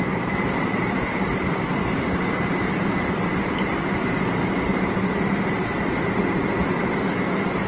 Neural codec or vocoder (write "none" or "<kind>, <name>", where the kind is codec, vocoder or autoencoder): none